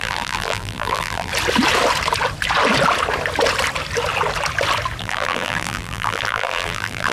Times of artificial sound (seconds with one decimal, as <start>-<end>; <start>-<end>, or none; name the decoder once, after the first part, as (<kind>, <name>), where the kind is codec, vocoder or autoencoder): 0.0-1.3 (vocoder, BigVGAN v2); 5.0-7.1